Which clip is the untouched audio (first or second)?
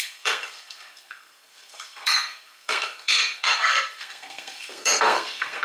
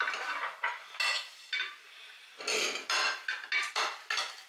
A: second